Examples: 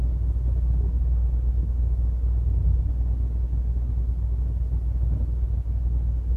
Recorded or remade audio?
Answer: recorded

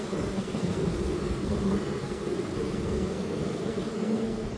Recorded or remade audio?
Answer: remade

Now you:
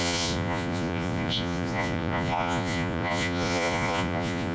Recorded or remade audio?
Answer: remade